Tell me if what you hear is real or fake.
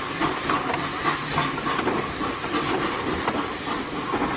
real